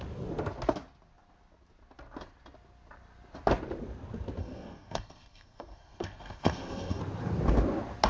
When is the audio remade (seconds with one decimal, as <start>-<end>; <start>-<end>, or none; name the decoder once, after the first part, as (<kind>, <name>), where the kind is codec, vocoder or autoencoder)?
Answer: 4.4-7.0 (codec, SNAC)